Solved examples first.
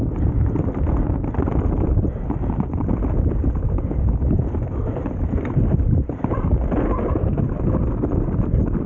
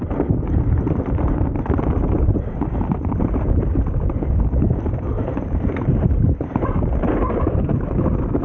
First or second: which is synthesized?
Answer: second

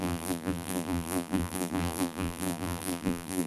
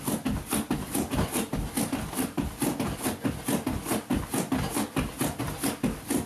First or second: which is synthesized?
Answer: first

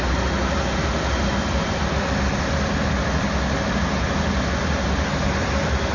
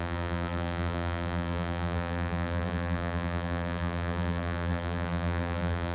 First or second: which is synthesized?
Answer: second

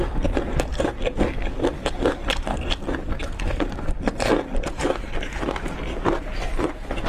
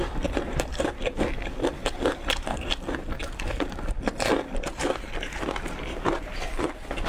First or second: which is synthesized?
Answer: second